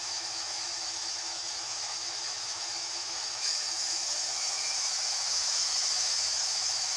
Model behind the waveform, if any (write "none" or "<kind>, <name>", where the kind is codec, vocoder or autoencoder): autoencoder, DAC-VAE